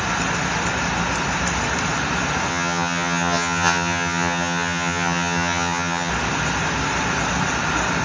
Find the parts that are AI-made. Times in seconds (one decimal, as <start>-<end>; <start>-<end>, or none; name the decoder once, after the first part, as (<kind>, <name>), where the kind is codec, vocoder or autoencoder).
2.5-6.1 (vocoder, HiFi-GAN)